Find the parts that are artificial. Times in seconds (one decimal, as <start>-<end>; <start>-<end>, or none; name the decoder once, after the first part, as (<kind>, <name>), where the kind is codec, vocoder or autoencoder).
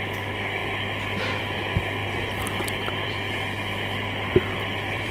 0.6-1.4 (vocoder, BigVGAN v2); 2.0-5.1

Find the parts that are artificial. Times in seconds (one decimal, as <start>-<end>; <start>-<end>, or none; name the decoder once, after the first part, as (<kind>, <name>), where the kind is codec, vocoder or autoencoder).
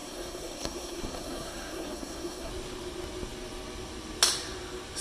0.0-2.5 (codec, SNAC)